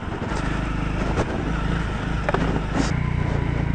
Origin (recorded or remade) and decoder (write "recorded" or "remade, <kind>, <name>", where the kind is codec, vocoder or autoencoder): recorded